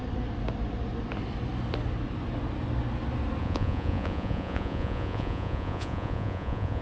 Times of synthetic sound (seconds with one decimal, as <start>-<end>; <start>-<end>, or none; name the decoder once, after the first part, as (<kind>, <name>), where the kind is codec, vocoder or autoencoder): 3.4-6.8 (vocoder, Vocos)